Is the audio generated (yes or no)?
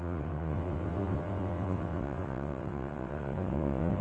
yes